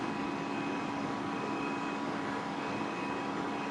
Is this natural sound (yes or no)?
no